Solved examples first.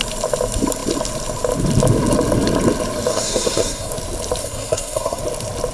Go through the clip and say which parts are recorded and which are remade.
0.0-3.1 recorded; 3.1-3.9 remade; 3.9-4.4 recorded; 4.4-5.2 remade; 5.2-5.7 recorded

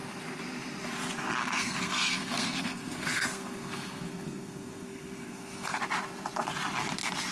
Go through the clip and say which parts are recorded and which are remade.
0.0-1.4 recorded; 1.4-5.8 remade; 5.8-7.3 recorded